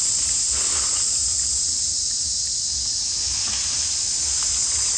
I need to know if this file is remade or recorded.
recorded